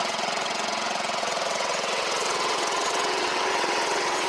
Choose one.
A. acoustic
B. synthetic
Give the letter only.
B